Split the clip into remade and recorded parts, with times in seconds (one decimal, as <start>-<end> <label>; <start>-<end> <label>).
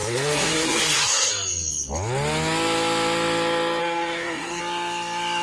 0.0-1.3 remade; 1.3-3.8 recorded; 3.8-4.6 remade; 4.6-5.4 recorded